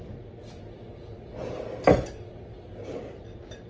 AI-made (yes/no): no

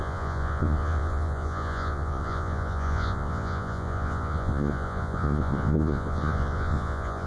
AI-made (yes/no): yes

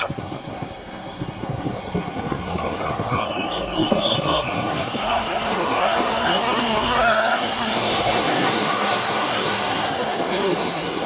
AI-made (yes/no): yes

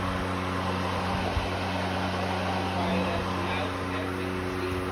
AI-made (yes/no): no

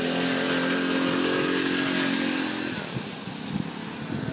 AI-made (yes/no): no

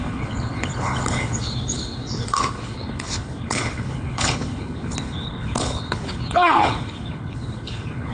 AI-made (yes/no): yes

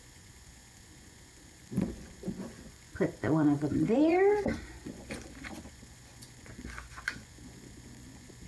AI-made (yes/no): yes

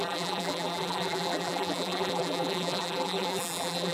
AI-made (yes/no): yes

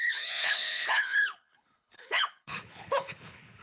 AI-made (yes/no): yes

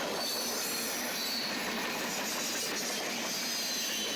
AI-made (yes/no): no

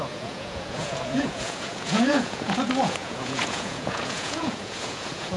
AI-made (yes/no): yes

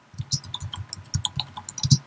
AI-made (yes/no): no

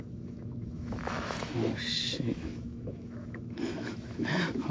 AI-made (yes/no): yes